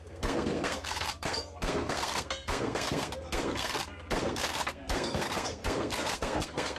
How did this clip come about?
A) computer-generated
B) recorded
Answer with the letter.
A